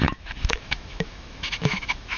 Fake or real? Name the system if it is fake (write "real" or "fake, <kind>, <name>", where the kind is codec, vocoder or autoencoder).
fake, autoencoder, DAC-VAE